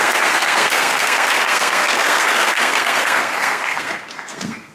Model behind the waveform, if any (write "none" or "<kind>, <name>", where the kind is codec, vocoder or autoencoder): codec, SNAC